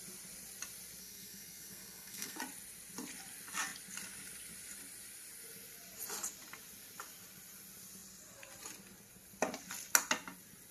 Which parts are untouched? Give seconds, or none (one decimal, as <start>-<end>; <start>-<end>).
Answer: 0.0-1.0; 2.4-10.7